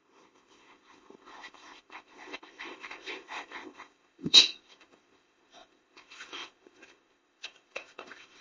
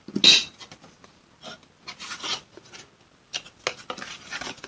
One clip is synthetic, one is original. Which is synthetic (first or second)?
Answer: first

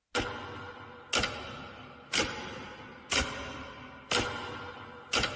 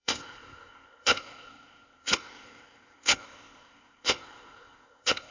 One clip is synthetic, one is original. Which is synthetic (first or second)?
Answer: second